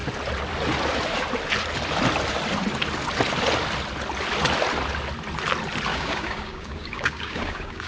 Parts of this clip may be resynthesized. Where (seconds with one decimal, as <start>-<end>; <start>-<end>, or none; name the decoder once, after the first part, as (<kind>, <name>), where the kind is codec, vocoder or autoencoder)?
5.9-7.9 (codec, DAC)